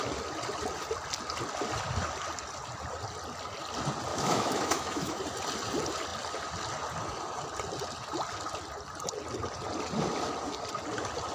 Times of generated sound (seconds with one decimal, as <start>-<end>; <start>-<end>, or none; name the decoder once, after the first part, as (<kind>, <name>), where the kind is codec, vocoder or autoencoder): 4.1-5.2 (autoencoder, DAC-VAE)